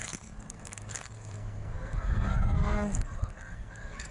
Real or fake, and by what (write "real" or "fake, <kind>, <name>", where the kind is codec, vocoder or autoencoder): fake, codec, SNAC